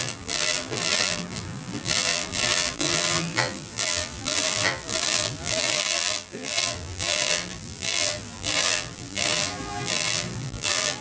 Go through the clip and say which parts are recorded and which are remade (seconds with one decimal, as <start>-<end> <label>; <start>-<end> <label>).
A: 0.0-11.0 remade